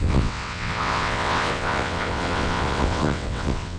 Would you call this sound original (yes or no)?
no